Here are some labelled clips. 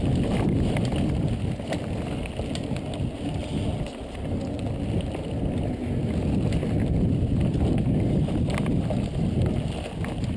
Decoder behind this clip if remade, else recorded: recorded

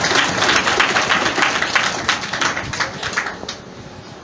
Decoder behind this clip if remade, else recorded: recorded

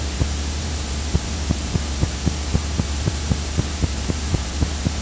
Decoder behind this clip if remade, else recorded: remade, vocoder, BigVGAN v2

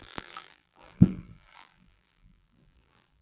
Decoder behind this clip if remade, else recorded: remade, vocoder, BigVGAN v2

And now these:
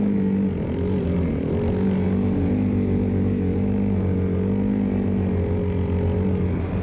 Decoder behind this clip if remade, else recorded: recorded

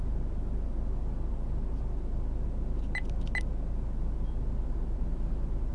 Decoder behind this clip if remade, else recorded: recorded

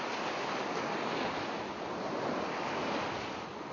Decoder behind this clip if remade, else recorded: recorded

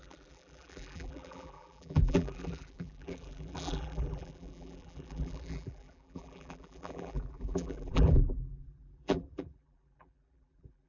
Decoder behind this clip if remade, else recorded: remade, vocoder, BigVGAN v2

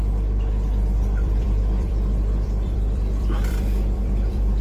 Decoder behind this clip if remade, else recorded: remade, vocoder, BigVGAN v2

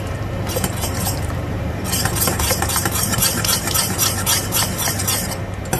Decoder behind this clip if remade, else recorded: remade, vocoder, BigVGAN v2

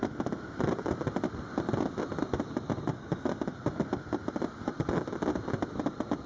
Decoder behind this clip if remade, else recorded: recorded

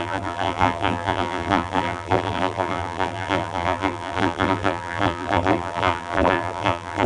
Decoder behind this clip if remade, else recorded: remade, vocoder, BigVGAN v2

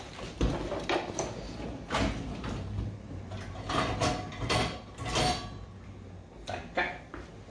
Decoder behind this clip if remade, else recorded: recorded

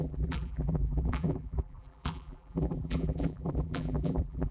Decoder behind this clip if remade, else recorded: remade, vocoder, BigVGAN v2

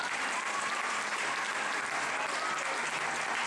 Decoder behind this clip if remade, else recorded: recorded